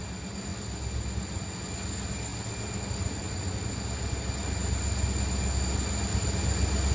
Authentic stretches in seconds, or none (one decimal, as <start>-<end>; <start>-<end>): 0.0-6.9